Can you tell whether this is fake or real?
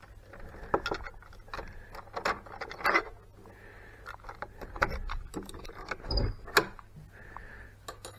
real